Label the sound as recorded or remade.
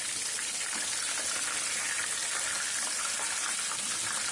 recorded